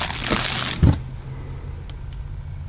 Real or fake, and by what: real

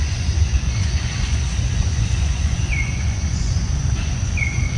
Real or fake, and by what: fake, vocoder, Vocos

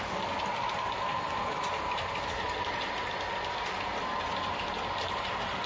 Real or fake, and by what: real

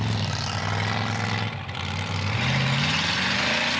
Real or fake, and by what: real